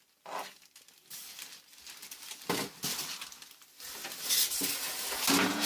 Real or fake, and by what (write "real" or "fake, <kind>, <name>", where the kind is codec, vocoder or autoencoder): real